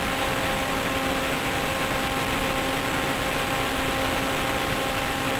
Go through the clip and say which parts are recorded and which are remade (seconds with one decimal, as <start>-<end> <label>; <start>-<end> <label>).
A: 0.0-1.8 remade; 1.8-4.6 recorded; 4.6-5.4 remade